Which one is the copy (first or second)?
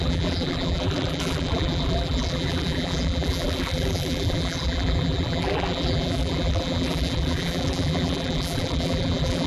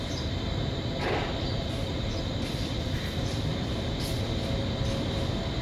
first